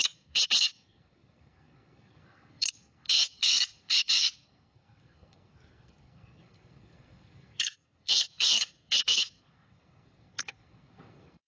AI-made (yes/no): yes